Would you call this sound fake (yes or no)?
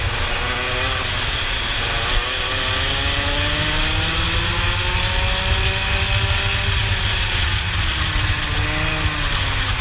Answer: no